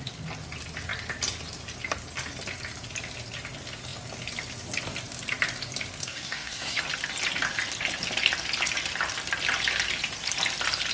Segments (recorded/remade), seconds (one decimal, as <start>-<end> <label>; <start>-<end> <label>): 0.0-6.0 recorded; 6.0-6.8 remade; 6.8-10.9 recorded